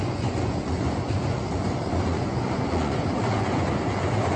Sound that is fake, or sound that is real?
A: fake